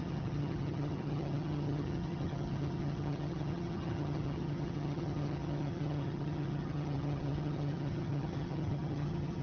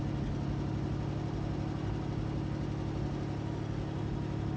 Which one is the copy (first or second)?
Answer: first